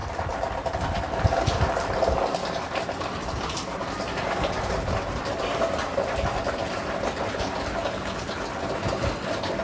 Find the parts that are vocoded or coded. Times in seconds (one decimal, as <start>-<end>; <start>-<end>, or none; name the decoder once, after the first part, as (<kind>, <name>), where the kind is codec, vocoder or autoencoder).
none